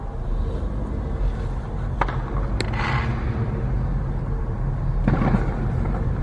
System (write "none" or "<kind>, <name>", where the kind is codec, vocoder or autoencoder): none